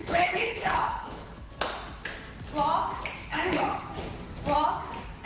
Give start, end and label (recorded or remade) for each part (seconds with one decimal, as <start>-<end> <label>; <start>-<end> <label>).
0.0-1.5 remade; 1.5-3.2 recorded; 3.2-3.9 remade; 3.9-5.3 recorded